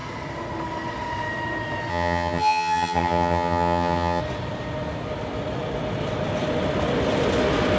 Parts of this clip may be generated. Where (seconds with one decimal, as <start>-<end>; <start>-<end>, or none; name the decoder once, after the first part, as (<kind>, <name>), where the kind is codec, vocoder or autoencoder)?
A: 1.9-4.2 (vocoder, HiFi-GAN)